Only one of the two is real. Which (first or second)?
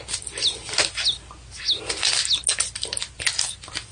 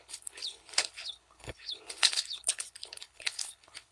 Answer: first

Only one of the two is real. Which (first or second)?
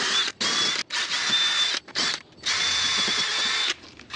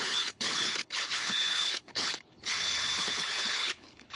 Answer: first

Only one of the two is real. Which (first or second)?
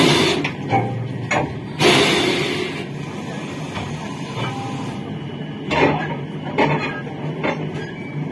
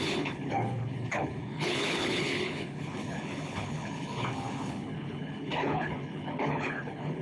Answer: first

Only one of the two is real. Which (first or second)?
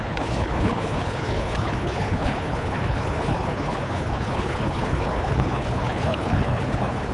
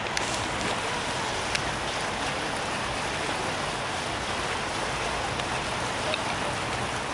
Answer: second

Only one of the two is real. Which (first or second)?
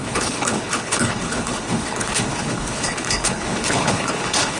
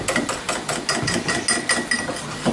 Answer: second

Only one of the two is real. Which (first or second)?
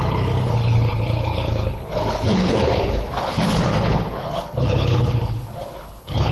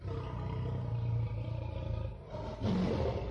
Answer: second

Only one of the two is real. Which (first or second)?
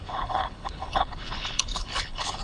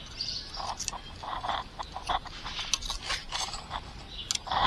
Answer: second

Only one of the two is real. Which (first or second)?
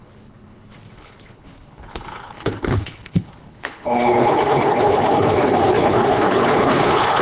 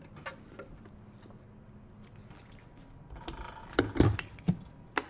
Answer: second